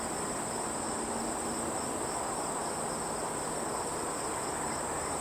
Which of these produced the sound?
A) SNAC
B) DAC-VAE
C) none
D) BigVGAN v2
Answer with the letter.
C